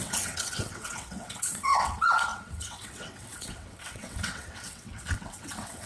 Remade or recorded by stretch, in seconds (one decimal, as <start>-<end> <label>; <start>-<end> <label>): 0.0-5.9 remade